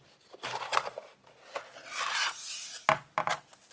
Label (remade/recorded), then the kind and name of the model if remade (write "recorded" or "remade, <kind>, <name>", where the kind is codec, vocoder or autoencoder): recorded